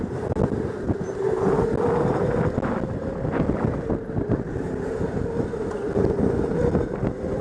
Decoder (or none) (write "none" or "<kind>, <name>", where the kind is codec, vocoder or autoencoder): none